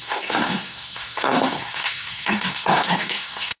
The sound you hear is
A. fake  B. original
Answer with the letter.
A